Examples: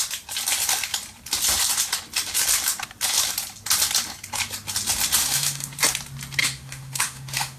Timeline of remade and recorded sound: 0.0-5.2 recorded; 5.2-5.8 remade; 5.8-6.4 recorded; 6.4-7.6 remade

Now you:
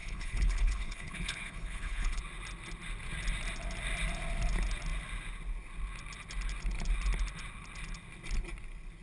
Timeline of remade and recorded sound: 0.0-2.2 remade; 2.2-9.0 recorded